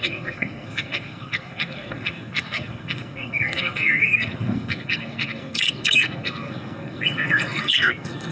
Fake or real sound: fake